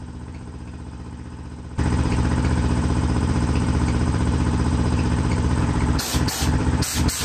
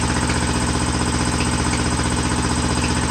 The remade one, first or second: first